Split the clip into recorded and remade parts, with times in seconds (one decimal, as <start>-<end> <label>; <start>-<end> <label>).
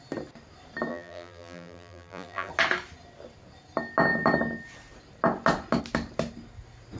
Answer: 0.0-0.9 recorded; 0.9-2.5 remade; 2.5-7.0 recorded